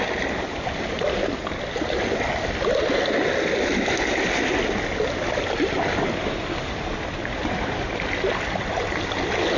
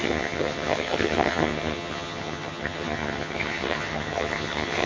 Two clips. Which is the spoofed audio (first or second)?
second